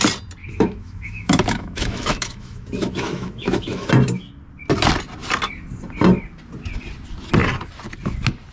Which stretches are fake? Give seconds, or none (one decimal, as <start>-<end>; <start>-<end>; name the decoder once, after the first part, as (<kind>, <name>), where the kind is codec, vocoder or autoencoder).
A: 0.4-3.9 (autoencoder, DAC-VAE)